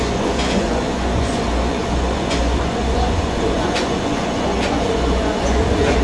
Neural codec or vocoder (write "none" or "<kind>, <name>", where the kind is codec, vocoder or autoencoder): vocoder, Vocos